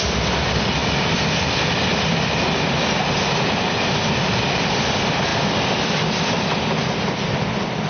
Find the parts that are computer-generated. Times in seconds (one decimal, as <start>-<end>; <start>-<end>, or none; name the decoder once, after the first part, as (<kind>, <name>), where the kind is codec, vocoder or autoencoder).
5.3-6.0 (vocoder, BigVGAN v2)